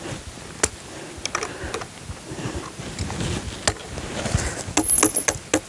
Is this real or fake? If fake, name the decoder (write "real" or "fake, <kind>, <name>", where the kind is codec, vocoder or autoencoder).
real